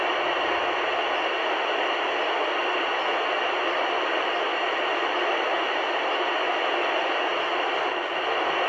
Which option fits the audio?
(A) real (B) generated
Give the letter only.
A